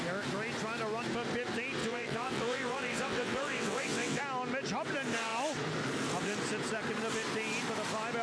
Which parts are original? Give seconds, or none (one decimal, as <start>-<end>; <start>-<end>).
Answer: 0.0-1.8; 4.2-8.2